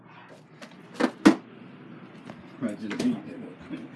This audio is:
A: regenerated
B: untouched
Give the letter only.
B